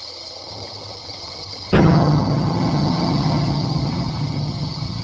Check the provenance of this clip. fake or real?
fake